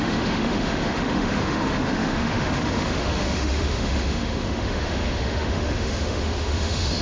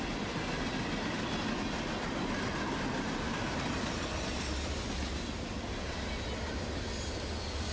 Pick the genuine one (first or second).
second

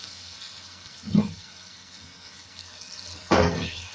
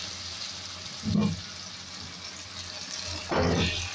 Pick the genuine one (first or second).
second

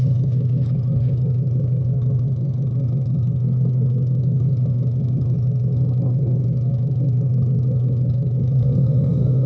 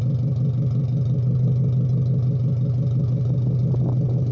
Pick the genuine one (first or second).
second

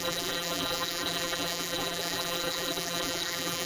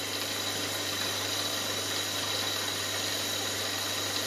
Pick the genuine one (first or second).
second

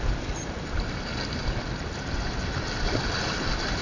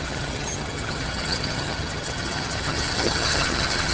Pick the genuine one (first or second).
first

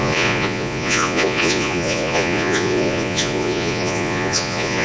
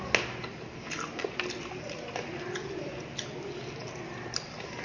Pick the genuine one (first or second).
second